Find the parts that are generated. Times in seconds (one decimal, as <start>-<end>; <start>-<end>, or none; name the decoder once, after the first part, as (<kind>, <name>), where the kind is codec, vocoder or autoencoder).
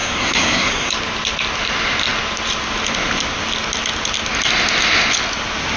0.0-0.9 (codec, SNAC)